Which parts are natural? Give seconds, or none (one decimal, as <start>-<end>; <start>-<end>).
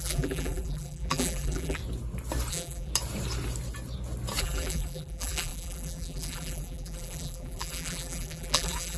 1.8-2.5; 2.9-4.4